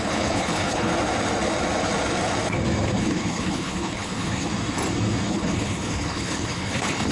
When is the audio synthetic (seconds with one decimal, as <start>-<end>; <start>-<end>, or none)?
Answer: 0.0-0.9; 3.0-4.5; 5.3-7.1